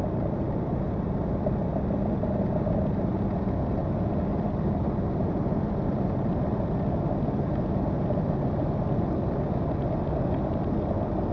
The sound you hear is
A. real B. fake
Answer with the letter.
A